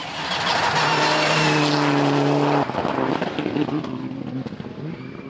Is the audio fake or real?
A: real